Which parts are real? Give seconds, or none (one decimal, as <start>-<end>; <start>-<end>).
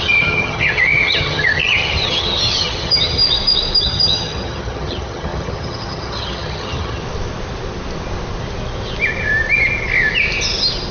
3.2-3.8; 7.0-10.9